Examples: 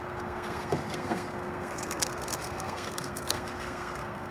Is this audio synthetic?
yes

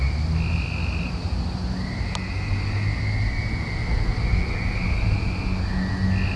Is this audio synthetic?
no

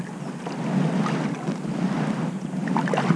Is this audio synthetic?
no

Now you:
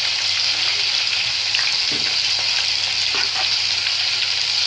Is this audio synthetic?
no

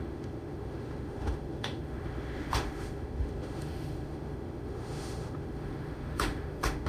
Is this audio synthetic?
yes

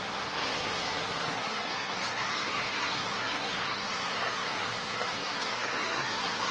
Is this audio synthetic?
yes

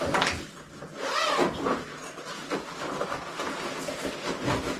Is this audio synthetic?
no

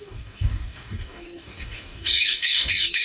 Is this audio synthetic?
yes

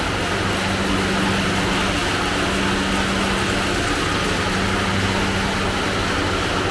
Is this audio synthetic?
no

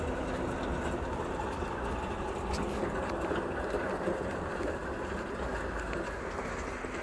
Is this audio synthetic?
no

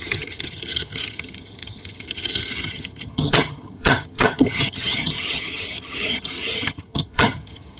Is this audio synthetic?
yes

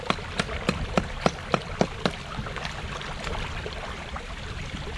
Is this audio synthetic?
yes